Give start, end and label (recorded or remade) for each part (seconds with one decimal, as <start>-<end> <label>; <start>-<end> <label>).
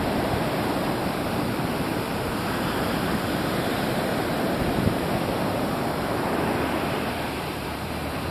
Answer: 0.0-4.1 remade; 4.1-4.9 recorded; 4.9-8.3 remade